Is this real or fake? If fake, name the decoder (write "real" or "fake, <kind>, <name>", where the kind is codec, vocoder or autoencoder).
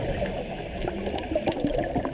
real